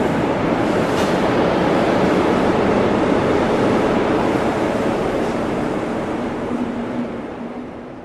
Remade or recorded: remade